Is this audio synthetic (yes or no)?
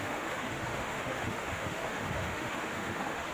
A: yes